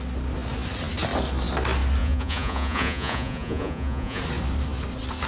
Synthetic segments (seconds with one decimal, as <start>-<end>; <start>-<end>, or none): 2.0-4.2